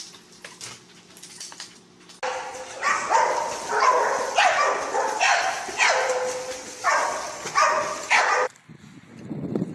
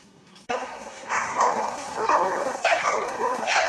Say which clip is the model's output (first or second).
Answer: second